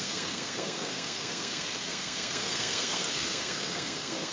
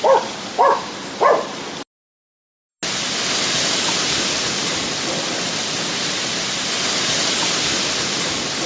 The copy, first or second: first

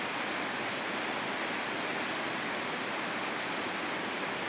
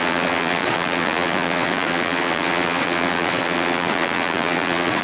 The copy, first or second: second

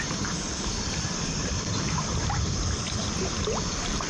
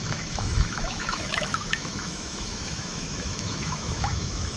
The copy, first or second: second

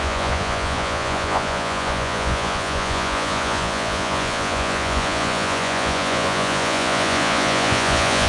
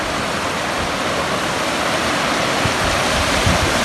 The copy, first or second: first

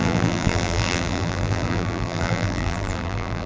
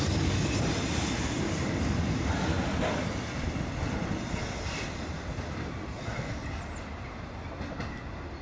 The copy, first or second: first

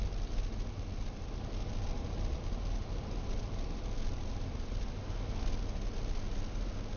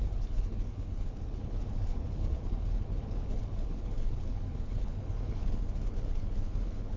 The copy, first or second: second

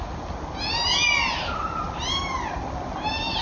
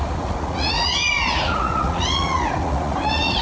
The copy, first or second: second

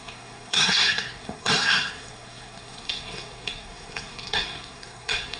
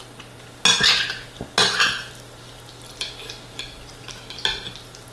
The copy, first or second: first